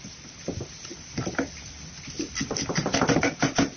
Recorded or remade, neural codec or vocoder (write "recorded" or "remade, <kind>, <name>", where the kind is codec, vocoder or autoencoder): recorded